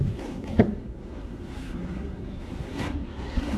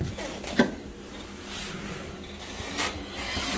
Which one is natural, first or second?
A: second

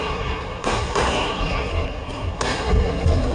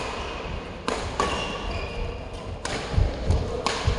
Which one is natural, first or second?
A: second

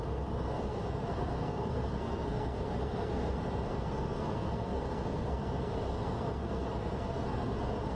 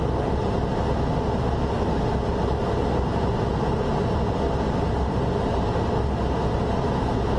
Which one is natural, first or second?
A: second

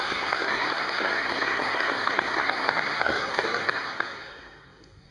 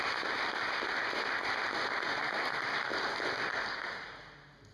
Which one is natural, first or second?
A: second